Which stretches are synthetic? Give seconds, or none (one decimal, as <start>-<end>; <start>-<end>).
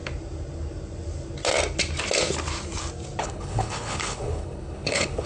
3.2-5.3